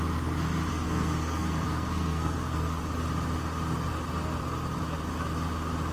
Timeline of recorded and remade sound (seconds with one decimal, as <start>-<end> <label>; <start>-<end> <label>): 0.0-0.7 recorded; 0.7-2.8 remade; 2.8-5.9 recorded